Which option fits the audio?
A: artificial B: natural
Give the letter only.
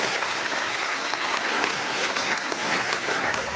A